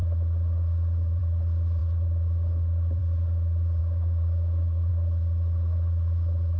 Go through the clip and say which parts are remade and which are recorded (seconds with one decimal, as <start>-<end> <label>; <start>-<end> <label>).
0.0-3.8 recorded; 3.8-4.9 remade; 4.9-6.6 recorded